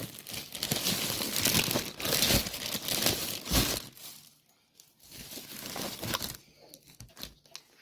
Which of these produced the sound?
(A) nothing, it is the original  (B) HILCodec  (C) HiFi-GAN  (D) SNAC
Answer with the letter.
A